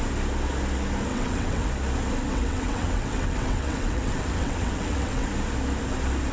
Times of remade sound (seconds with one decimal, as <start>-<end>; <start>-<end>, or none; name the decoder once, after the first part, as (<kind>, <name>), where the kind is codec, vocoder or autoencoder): 1.1-1.7 (vocoder, WaveNeXt); 2.3-5.3